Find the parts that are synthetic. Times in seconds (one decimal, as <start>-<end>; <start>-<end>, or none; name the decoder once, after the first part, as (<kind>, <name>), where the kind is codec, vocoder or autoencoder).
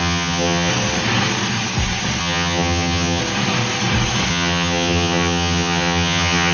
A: 0.0-0.7 (vocoder, HiFi-GAN); 2.2-3.2; 4.3-6.5